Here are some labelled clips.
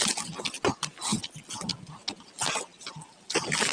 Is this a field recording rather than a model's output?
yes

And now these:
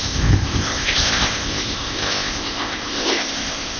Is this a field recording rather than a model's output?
no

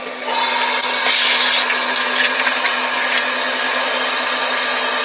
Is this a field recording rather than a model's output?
yes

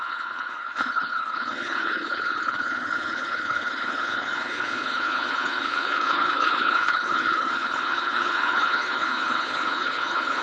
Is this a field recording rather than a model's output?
no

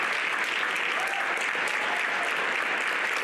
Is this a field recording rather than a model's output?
yes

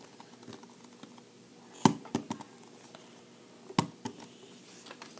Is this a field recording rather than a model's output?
yes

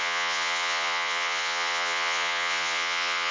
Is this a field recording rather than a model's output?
no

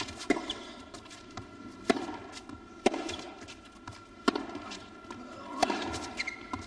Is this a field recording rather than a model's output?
yes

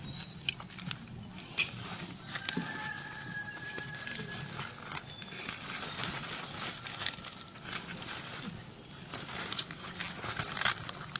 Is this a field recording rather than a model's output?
yes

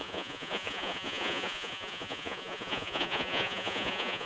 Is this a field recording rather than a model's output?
no